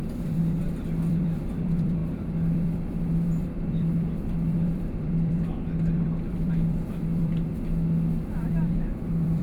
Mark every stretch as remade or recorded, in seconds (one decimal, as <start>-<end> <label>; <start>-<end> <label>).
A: 0.0-7.5 remade; 7.5-8.5 recorded; 8.5-9.4 remade